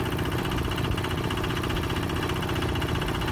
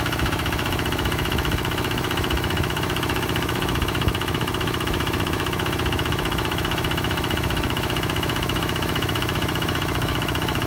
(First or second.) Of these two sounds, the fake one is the second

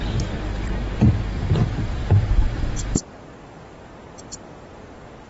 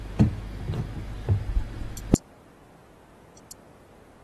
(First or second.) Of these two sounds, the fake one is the first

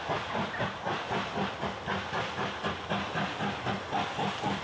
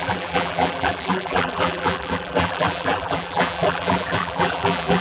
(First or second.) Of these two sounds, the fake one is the second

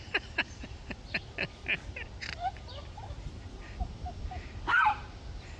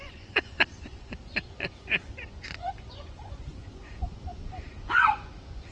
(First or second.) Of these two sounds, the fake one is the second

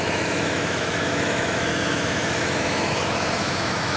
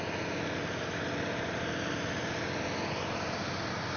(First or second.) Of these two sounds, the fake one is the first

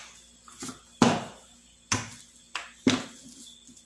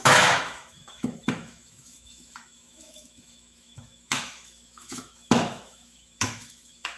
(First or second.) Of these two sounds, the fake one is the second